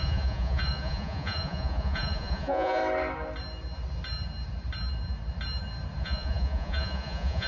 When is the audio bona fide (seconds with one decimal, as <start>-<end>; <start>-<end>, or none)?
2.8-6.0